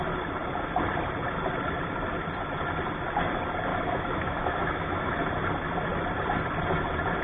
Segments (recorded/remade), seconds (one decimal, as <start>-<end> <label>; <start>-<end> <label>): 0.0-3.7 recorded; 3.7-5.1 remade; 5.1-7.2 recorded